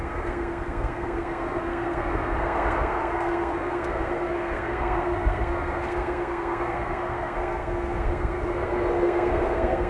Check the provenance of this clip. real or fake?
fake